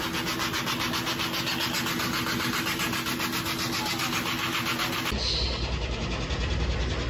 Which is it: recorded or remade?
recorded